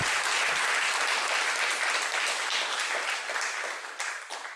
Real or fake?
real